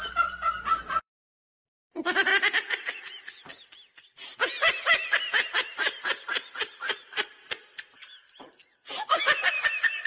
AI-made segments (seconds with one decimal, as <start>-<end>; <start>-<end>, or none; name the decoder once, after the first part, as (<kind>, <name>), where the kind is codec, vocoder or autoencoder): 0.0-2.3 (vocoder, BigVGAN v2); 5.5-8.0; 9.5-10.1